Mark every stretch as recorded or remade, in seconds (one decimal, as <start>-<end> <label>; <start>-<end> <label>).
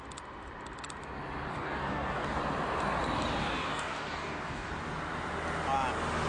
0.0-1.5 recorded; 1.5-2.4 remade; 2.4-3.4 recorded; 3.4-4.7 remade; 4.7-6.3 recorded